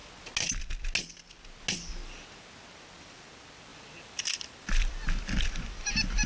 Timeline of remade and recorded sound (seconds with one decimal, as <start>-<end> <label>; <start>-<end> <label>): 0.0-3.7 recorded; 3.7-6.3 remade

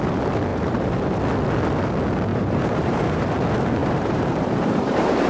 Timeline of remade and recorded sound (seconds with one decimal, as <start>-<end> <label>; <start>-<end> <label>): 0.0-0.5 recorded; 0.5-1.2 remade; 1.2-2.3 recorded; 2.3-3.2 remade; 3.2-3.8 recorded; 3.8-5.3 remade

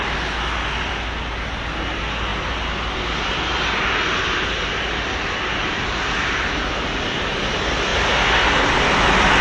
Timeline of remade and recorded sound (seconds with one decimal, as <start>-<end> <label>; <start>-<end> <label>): 0.0-9.4 recorded

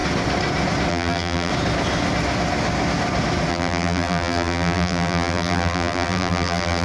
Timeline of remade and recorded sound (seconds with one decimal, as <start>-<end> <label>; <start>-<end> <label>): 0.0-0.9 recorded; 0.9-1.5 remade; 1.5-3.5 recorded; 3.5-6.8 remade

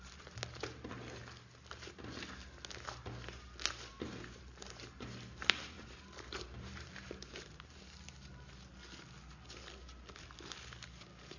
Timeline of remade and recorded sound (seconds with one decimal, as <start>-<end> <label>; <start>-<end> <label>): 0.0-3.9 recorded; 3.9-7.8 remade; 7.8-11.4 recorded

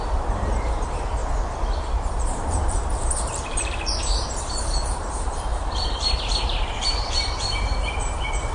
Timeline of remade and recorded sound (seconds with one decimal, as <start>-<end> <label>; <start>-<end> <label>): 0.0-1.2 remade; 1.2-2.0 recorded; 2.0-8.5 remade